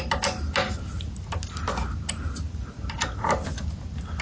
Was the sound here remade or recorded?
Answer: recorded